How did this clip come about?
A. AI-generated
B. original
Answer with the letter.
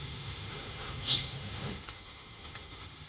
A